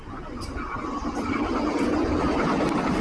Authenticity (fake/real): real